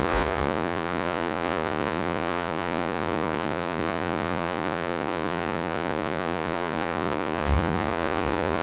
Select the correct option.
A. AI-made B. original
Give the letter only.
A